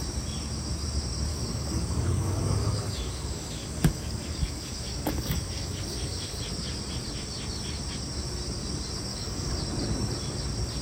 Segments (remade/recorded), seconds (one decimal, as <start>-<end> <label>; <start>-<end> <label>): 0.0-1.3 recorded; 1.3-6.4 remade; 6.4-9.1 recorded; 9.1-9.6 remade; 9.6-10.8 recorded